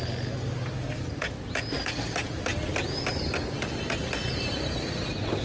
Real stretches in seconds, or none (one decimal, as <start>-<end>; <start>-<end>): 0.0-5.4